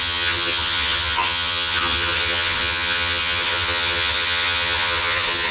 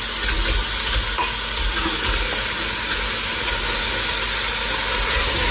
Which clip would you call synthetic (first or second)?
first